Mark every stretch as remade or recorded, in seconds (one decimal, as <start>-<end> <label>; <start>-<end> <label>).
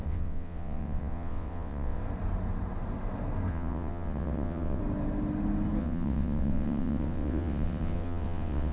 0.0-2.0 remade; 2.0-3.5 recorded; 3.5-4.8 remade; 4.8-5.8 recorded; 5.8-8.7 remade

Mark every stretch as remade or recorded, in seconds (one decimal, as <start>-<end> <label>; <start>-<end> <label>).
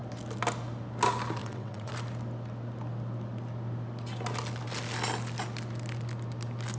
0.0-1.4 recorded; 1.4-1.9 remade; 1.9-6.8 recorded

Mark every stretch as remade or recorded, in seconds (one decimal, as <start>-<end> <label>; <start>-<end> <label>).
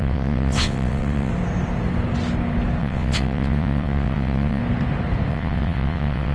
0.0-1.3 remade; 1.3-2.8 recorded; 2.8-4.6 remade; 4.6-5.3 recorded; 5.3-6.3 remade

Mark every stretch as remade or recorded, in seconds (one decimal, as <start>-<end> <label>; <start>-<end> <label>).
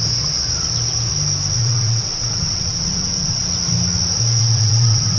0.0-1.6 recorded; 1.6-3.5 remade; 3.5-4.4 recorded; 4.4-5.2 remade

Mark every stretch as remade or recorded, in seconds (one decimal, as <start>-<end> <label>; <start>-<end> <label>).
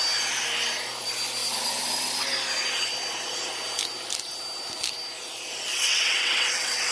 0.0-5.7 recorded; 5.7-6.9 remade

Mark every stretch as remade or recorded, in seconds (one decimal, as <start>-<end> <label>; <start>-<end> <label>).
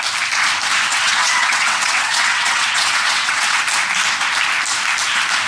0.0-0.9 recorded; 0.9-3.6 remade; 3.6-5.5 recorded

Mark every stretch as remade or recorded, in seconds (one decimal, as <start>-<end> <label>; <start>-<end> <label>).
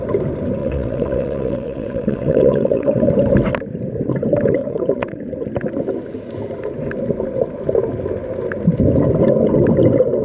0.0-0.6 recorded; 0.6-3.1 remade; 3.1-4.6 recorded; 4.6-5.2 remade; 5.2-10.2 recorded